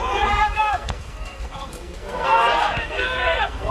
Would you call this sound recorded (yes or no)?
no